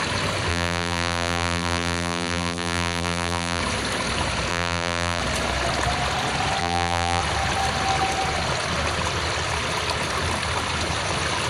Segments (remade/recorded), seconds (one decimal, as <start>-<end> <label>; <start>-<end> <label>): 0.0-0.5 recorded; 0.5-3.6 remade; 3.6-4.5 recorded; 4.5-5.2 remade; 5.2-6.6 recorded; 6.6-7.2 remade; 7.2-11.5 recorded